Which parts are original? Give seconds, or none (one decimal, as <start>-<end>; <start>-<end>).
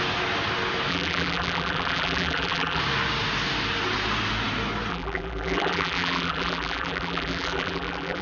0.0-0.9; 2.8-4.9